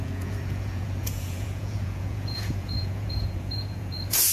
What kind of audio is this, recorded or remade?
remade